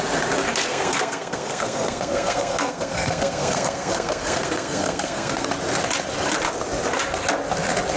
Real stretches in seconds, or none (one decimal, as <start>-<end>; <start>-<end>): 0.0-0.7; 5.5-8.0